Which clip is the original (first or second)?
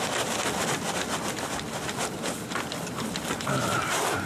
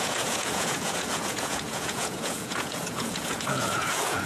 first